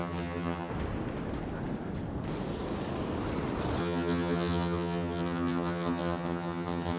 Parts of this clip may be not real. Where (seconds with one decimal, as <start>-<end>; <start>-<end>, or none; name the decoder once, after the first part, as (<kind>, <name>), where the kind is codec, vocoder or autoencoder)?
0.0-0.7 (vocoder, HiFi-GAN); 3.8-7.0